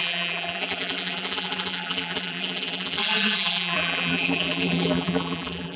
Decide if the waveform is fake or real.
fake